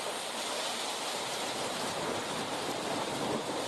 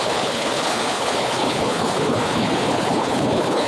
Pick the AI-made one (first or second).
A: second